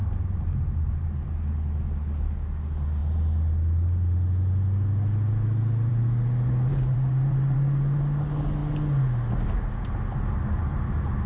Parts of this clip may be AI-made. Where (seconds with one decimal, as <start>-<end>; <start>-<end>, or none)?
0.0-0.9; 6.7-8.0